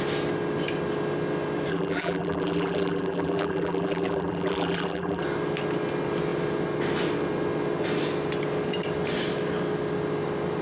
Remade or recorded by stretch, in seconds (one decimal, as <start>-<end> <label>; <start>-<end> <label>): 0.0-1.7 recorded; 1.7-5.2 remade; 5.2-10.6 recorded